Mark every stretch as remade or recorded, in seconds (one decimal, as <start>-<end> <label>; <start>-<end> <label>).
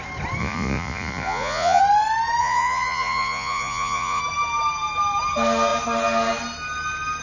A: 0.0-0.4 recorded; 0.4-1.8 remade; 1.8-2.4 recorded; 2.4-4.2 remade; 4.2-7.2 recorded